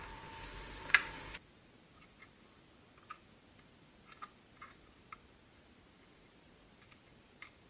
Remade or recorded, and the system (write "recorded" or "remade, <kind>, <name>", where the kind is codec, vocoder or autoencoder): recorded